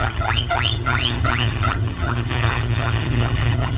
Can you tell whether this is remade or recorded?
remade